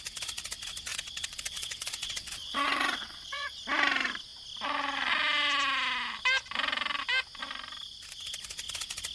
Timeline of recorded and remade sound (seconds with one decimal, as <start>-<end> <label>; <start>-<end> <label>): 0.0-0.9 recorded; 0.9-3.6 remade; 3.6-9.1 recorded